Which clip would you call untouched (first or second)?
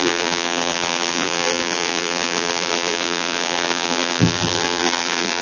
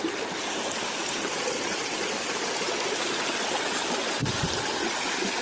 second